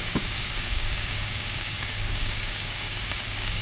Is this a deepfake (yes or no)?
yes